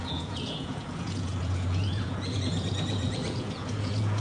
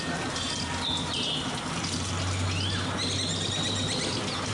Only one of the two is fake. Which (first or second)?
first